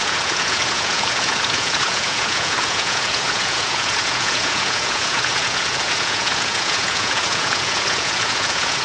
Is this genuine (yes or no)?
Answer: no